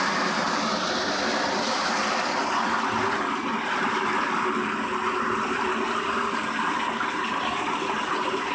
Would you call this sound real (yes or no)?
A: yes